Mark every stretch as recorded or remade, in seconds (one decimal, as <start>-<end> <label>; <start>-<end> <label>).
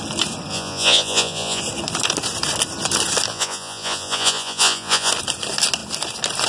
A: 0.0-0.5 recorded; 0.5-1.6 remade; 1.6-3.3 recorded; 3.3-5.1 remade; 5.1-6.5 recorded